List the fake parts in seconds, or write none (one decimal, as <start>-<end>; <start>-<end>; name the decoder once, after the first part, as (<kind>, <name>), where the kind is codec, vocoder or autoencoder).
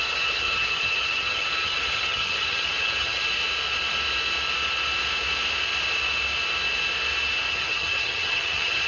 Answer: 0.0-3.3 (vocoder, HiFi-GAN); 7.5-8.9